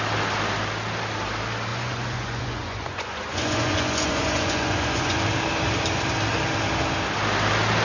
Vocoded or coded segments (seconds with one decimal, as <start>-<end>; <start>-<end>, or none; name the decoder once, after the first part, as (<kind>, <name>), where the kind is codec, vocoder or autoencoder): 1.7-5.2 (vocoder, Vocos)